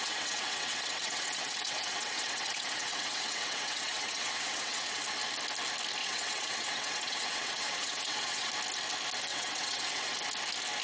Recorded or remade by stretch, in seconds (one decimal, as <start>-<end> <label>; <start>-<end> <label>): 0.0-5.0 remade; 5.0-6.0 recorded; 6.0-8.5 remade; 8.5-9.3 recorded; 9.3-10.1 remade; 10.1-10.8 recorded